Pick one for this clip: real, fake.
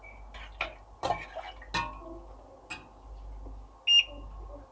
real